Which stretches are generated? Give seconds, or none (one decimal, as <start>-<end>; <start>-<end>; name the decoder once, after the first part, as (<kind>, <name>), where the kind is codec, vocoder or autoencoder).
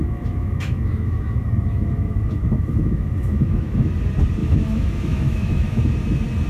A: 0.0-3.9 (autoencoder, DAC-VAE); 4.4-5.8